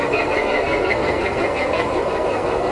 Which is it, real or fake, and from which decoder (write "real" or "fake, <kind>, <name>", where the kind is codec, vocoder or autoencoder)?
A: fake, codec, SNAC